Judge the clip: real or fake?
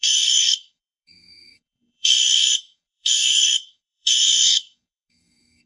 fake